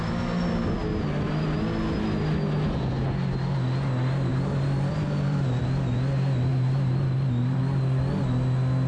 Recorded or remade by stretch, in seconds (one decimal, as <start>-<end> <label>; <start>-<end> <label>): 0.0-4.3 recorded; 4.3-5.6 remade; 5.6-6.5 recorded; 6.5-7.6 remade; 7.6-8.9 recorded